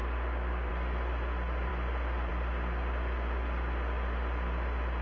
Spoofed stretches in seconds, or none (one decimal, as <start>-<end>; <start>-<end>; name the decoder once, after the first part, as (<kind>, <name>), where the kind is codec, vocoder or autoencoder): none